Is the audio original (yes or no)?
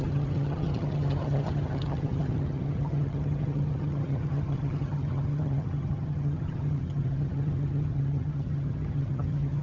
no